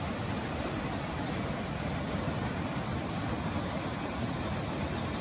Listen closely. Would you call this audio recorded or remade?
recorded